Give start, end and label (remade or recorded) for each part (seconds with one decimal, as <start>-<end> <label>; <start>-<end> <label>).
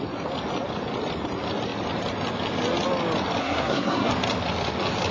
0.0-3.4 recorded; 3.4-4.1 remade; 4.1-5.1 recorded